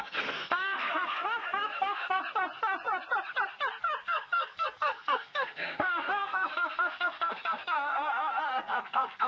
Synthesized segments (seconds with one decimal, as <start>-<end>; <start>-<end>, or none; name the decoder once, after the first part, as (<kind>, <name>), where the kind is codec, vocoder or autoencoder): 0.0-2.2 (codec, SNAC); 4.0-9.3